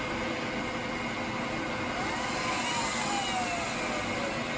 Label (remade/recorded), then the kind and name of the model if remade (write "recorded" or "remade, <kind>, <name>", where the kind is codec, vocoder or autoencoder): recorded